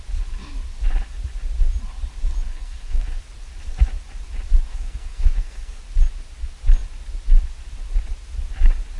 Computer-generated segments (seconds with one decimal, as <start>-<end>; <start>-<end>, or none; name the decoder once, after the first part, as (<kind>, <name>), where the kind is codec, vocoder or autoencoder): 2.5-3.2 (codec, SNAC); 4.7-5.8